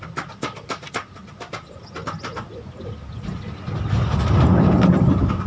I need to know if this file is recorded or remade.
recorded